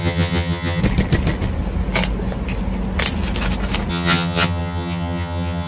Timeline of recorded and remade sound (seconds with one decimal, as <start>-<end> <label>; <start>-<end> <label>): 0.0-0.8 remade; 0.8-3.9 recorded; 3.9-5.7 remade